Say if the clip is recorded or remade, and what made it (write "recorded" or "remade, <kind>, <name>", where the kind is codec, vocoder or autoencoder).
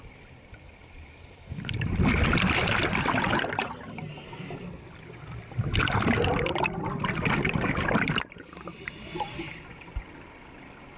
recorded